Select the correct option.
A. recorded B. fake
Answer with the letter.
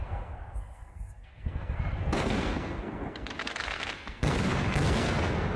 B